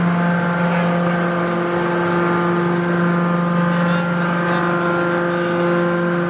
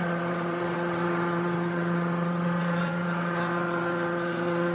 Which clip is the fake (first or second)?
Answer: second